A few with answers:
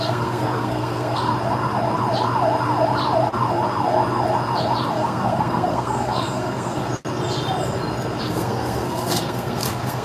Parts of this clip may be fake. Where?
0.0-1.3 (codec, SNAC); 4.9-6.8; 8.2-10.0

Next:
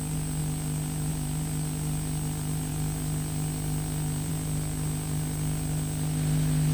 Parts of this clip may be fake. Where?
none

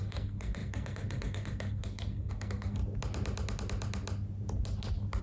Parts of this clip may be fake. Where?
0.0-2.8 (codec, SNAC)